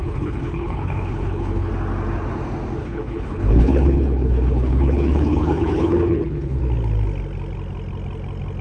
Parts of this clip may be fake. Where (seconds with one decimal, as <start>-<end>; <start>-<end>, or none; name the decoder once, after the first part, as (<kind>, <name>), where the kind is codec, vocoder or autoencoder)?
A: 0.0-1.7 (codec, HILCodec); 2.8-6.6